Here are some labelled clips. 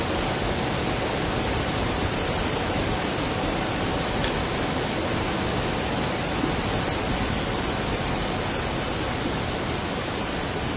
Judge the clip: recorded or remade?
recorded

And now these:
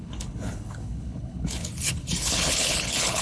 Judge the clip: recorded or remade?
remade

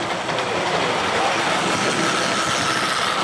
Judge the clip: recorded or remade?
recorded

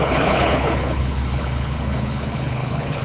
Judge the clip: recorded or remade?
remade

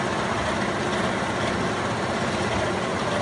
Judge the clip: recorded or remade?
recorded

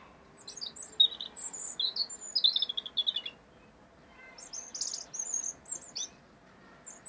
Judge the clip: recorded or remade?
recorded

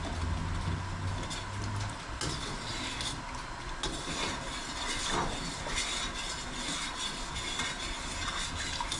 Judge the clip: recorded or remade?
recorded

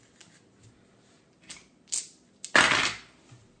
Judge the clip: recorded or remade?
recorded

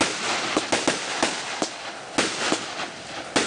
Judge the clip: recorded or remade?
recorded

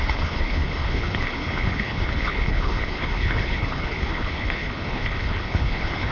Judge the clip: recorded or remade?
remade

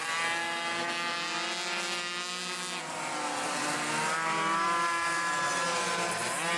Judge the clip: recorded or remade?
recorded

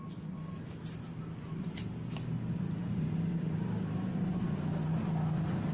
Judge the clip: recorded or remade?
recorded